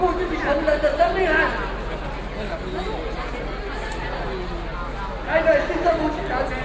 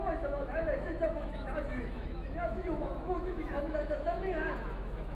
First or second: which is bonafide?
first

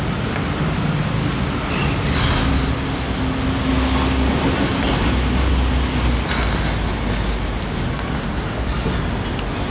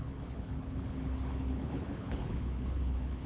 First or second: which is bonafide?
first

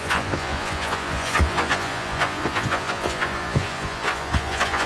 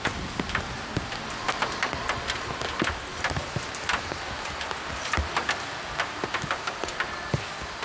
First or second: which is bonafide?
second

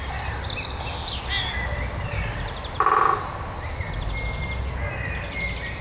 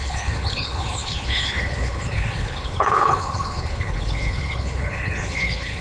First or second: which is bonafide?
first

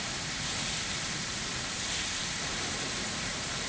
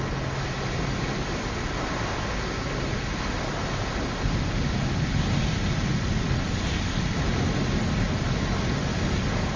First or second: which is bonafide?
second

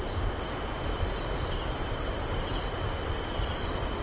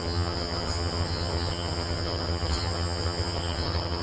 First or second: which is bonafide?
first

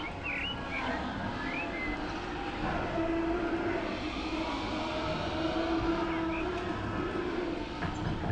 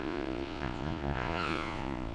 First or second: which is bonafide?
first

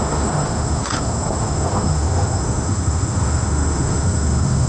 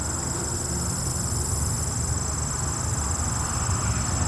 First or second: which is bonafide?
second